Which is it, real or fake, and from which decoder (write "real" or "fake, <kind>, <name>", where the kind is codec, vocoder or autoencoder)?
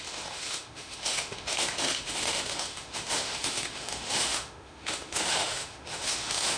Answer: fake, autoencoder, DAC-VAE